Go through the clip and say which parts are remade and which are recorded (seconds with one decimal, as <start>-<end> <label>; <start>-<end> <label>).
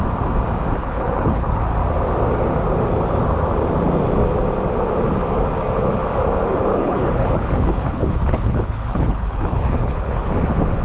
0.0-0.8 recorded; 0.8-1.6 remade; 1.6-6.7 recorded; 6.7-10.3 remade; 10.3-10.8 recorded